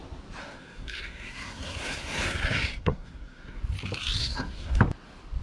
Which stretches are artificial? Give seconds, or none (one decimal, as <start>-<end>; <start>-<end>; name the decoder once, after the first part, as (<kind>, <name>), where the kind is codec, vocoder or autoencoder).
0.4-3.6 (codec, SNAC); 4.2-4.8